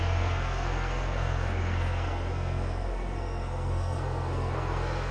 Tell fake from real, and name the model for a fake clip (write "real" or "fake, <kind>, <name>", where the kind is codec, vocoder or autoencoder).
fake, codec, SNAC